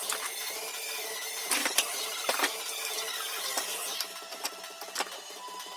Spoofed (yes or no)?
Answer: no